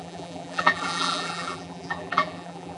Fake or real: fake